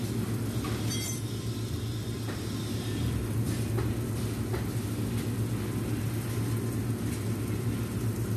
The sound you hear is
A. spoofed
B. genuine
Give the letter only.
B